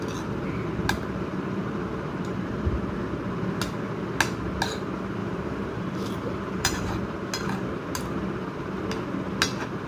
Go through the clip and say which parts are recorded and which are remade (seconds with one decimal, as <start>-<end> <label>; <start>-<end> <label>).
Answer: 0.0-5.2 recorded; 5.2-6.9 remade; 6.9-9.9 recorded